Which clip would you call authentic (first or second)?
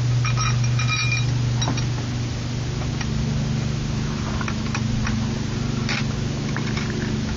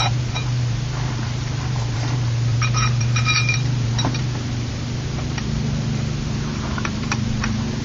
first